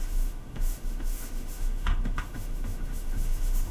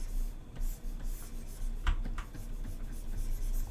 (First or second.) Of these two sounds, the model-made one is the first